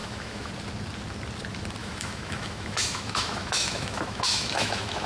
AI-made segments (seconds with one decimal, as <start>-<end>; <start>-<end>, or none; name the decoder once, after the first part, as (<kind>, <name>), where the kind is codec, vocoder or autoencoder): 0.0-0.5 (autoencoder, DAC-VAE); 1.8-5.1